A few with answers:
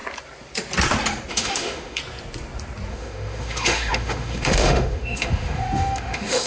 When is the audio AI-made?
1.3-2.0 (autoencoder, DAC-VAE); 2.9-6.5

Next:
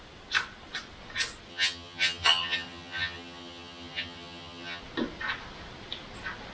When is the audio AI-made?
1.5-4.8 (vocoder, HiFi-GAN)

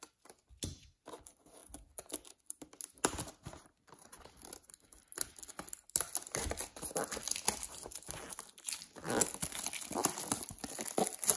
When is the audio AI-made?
none

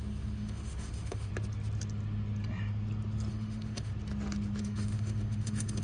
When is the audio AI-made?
0.0-1.3 (autoencoder, DAC-VAE); 3.3-3.9; 4.6-5.8

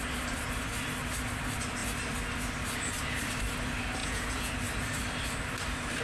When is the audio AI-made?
4.0-4.5 (vocoder, Vocos)

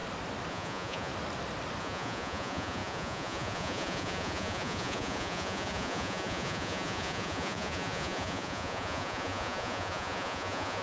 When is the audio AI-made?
0.5-1.1 (vocoder, Vocos); 1.8-10.8

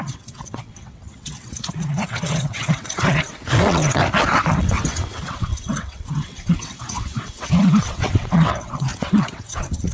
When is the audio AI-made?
0.0-4.0 (vocoder, WaveNeXt); 4.6-9.9

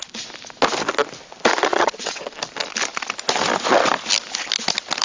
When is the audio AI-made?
1.7-2.3 (vocoder, WaveNeXt)